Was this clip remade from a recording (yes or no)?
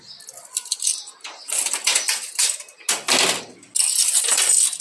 no